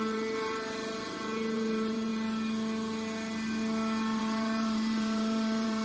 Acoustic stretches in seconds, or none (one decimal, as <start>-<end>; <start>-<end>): 2.1-4.2